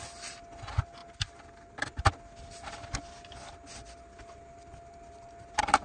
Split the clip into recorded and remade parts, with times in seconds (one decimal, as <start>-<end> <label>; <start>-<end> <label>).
0.0-5.8 recorded